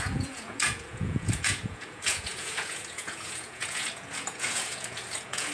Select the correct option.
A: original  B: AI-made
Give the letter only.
B